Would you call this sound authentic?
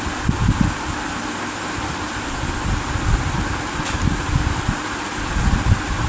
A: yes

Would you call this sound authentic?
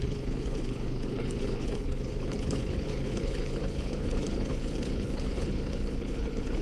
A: no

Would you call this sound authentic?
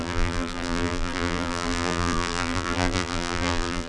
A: no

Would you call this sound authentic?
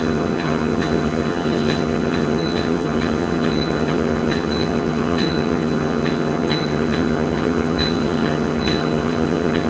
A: no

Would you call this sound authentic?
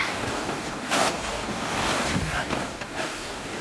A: no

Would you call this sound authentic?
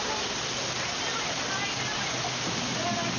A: yes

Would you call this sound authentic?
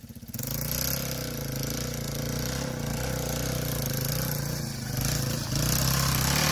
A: yes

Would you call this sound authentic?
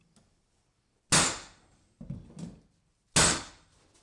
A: yes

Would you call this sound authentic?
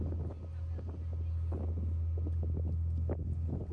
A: yes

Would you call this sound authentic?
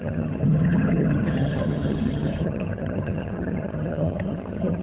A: no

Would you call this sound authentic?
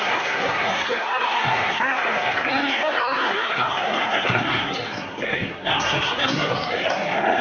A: no